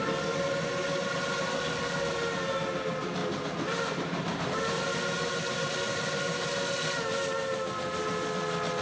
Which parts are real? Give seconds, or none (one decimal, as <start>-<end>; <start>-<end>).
0.0-8.8